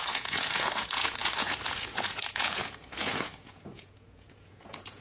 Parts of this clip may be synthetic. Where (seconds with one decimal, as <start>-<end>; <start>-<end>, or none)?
0.0-5.0